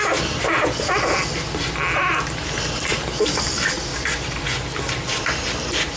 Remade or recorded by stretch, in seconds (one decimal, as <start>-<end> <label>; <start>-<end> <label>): 0.0-3.9 recorded; 3.9-6.0 remade